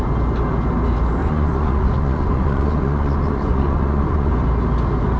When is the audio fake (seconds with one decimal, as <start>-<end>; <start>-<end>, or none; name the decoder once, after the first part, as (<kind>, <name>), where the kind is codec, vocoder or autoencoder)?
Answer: 1.2-4.3 (vocoder, Vocos)